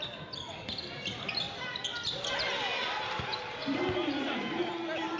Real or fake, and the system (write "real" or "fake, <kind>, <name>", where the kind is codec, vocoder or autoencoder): real